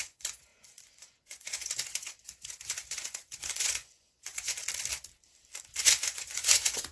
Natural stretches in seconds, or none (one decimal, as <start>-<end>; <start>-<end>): 4.6-5.8

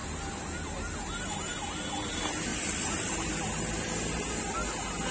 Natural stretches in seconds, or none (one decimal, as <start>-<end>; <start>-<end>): 0.0-2.5; 3.4-5.1

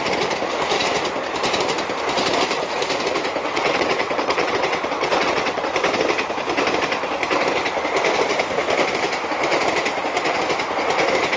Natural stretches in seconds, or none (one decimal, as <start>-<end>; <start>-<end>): 0.0-3.4; 5.6-11.4

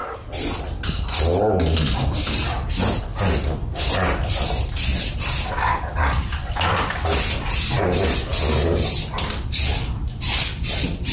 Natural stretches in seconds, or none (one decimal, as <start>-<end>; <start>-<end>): 0.0-11.1

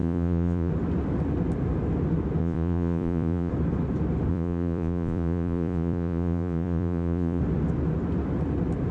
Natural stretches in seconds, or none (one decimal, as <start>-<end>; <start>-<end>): 0.7-2.4; 3.5-4.3; 7.4-8.9

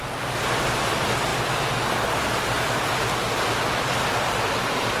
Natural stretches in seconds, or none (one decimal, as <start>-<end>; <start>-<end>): 1.3-2.2